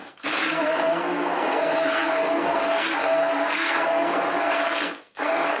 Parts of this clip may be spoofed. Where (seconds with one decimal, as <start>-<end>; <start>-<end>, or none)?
0.0-5.6

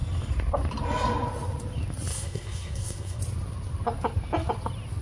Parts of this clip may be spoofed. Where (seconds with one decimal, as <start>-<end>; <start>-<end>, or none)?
2.1-3.2

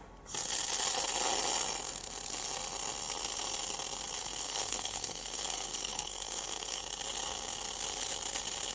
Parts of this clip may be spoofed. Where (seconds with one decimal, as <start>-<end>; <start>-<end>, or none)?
4.2-6.8

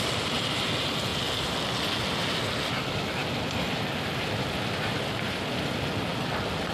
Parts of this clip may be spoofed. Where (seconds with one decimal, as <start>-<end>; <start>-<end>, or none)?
none

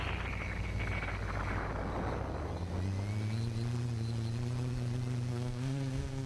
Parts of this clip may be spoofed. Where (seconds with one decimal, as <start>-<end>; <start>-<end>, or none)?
5.3-6.3

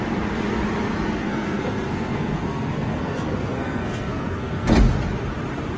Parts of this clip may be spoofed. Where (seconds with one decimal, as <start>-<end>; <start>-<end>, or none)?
1.2-4.7

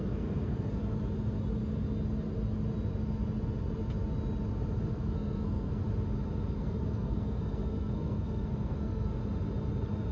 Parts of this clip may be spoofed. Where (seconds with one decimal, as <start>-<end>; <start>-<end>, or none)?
0.0-0.8; 4.8-5.8; 6.5-9.2